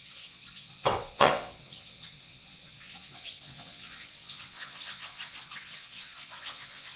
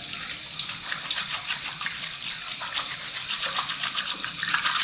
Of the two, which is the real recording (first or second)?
second